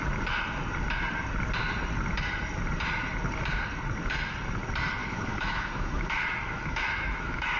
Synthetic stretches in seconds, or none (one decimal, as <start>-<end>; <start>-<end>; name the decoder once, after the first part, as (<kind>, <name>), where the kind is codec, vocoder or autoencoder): 5.0-7.6 (autoencoder, DAC-VAE)